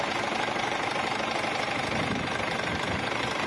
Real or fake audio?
fake